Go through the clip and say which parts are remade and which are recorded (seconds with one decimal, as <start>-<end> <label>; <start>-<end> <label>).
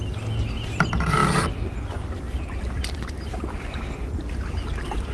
0.0-5.1 recorded